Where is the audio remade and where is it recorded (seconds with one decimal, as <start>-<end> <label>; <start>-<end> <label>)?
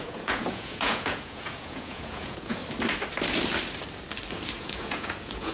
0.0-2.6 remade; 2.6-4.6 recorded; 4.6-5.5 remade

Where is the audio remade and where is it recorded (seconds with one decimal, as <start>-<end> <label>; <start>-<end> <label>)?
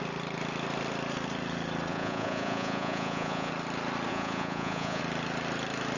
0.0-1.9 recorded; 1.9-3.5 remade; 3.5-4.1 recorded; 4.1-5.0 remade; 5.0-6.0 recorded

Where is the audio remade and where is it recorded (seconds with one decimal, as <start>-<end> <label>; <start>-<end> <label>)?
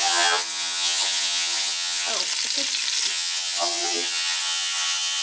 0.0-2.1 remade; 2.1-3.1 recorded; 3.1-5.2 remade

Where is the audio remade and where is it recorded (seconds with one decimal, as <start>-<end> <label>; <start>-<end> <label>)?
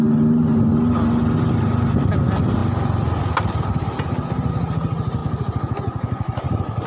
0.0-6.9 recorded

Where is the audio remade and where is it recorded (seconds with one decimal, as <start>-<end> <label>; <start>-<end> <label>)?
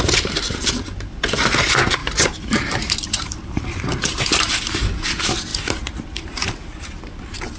0.0-2.0 recorded; 2.0-4.5 remade; 4.5-5.5 recorded; 5.5-7.0 remade; 7.0-7.6 recorded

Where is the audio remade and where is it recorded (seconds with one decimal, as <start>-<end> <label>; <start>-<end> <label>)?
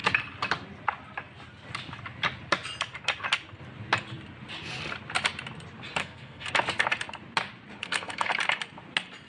0.0-6.0 recorded; 6.0-6.5 remade; 6.5-7.8 recorded; 7.8-8.3 remade; 8.3-9.3 recorded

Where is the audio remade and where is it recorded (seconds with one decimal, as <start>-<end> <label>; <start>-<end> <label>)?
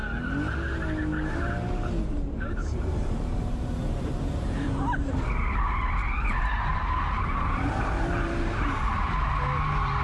0.0-2.6 recorded; 2.6-5.2 remade; 5.2-6.7 recorded; 6.7-9.3 remade; 9.3-10.0 recorded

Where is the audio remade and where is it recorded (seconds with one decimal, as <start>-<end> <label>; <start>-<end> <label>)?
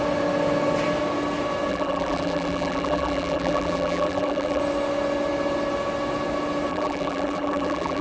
0.0-1.7 recorded; 1.7-4.6 remade; 4.6-6.7 recorded; 6.7-8.0 remade